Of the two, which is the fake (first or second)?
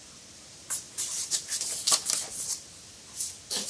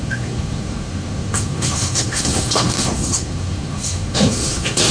second